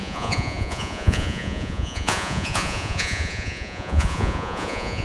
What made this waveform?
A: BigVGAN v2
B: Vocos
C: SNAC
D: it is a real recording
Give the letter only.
B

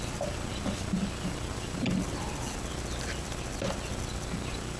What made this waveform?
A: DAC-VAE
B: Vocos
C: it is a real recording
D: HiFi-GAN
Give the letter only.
C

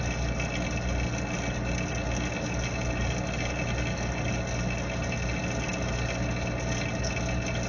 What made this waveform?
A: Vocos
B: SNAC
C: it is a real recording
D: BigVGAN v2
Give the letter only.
C